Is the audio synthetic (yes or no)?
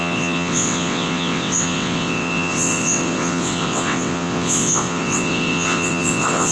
yes